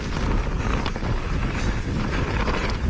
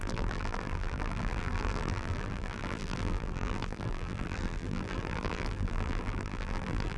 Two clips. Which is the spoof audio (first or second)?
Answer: second